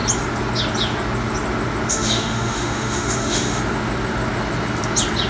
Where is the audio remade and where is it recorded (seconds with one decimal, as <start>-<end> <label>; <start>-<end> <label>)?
0.0-1.9 recorded; 1.9-3.6 remade; 3.6-5.3 recorded